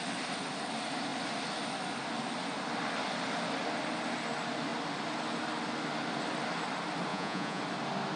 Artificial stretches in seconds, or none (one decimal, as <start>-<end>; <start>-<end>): 7.1-7.6